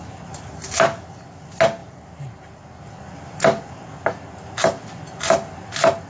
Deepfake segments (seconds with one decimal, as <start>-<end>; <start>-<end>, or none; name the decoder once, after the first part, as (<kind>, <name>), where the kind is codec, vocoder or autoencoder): none